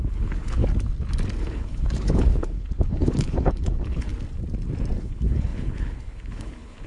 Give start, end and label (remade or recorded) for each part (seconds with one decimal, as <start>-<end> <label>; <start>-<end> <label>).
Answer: 0.0-0.6 remade; 0.6-1.4 recorded; 1.4-4.1 remade; 4.1-5.0 recorded; 5.0-6.9 remade